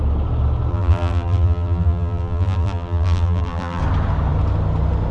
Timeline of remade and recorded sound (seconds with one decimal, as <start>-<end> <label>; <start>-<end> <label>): 0.0-0.7 recorded; 0.7-3.8 remade; 3.8-5.1 recorded